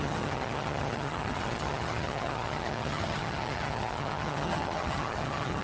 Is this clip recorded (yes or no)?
no